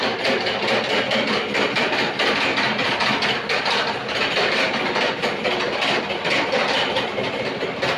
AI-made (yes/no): yes